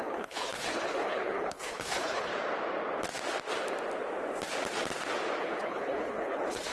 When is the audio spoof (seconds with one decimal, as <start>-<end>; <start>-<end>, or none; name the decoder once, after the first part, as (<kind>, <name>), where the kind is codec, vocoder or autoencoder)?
0.0-2.3 (codec, HILCodec); 5.4-6.7